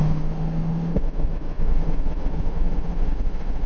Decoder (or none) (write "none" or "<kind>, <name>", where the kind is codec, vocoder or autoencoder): autoencoder, DAC-VAE